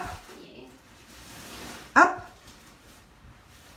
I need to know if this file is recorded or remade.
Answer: remade